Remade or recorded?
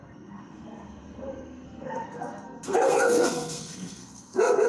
remade